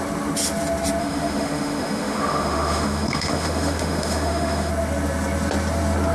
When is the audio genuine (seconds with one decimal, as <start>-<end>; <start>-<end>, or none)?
0.0-1.0; 4.7-6.1